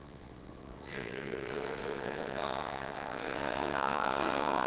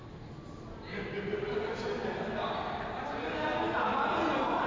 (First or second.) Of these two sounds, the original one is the second